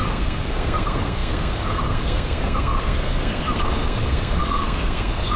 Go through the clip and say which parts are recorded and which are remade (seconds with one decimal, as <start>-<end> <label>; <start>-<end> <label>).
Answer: 0.0-5.4 remade